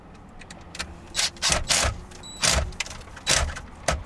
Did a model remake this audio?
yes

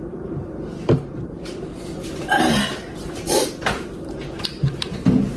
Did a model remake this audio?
yes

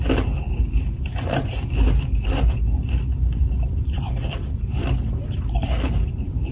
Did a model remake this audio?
yes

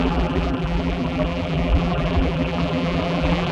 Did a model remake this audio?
yes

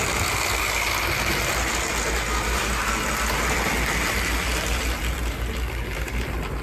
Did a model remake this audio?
no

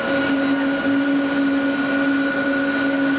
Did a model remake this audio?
no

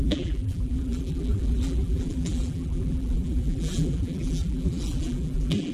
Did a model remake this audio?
yes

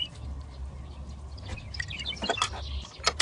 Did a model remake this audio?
no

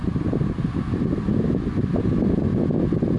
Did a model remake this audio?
no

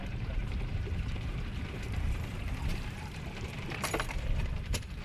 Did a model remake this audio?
yes